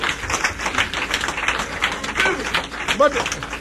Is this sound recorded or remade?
recorded